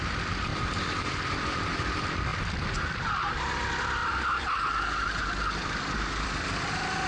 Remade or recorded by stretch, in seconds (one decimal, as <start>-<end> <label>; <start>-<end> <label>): 0.0-0.5 remade; 0.5-1.5 recorded; 1.5-7.1 remade